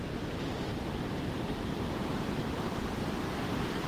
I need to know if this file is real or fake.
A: fake